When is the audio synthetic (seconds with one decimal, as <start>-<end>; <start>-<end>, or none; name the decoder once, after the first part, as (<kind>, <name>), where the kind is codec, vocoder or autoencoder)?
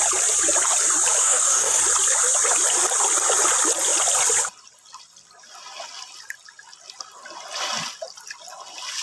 1.2-1.8 (codec, DAC)